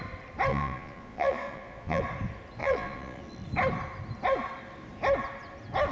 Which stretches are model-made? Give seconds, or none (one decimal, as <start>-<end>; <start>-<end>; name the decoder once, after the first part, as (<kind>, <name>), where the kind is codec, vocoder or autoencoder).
0.5-2.0 (vocoder, Vocos); 2.6-3.2